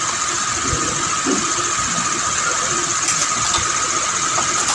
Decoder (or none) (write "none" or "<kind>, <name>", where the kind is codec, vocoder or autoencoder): none